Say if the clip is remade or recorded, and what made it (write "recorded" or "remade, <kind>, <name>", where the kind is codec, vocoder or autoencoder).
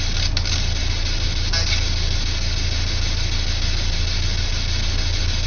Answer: recorded